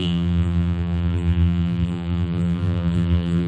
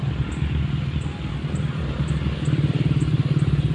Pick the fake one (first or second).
first